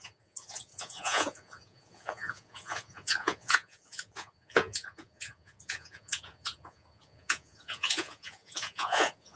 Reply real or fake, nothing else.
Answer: fake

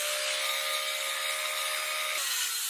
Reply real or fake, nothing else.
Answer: real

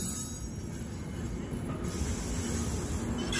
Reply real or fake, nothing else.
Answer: real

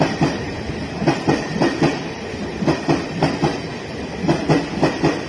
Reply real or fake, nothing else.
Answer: fake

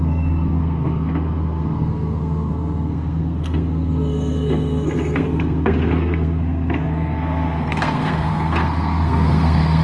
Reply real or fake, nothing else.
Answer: fake